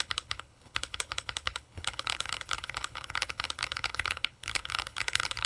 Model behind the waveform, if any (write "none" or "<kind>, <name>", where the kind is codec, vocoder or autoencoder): codec, HILCodec